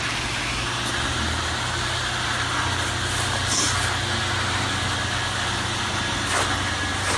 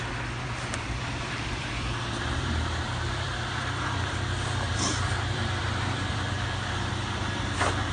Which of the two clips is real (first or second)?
first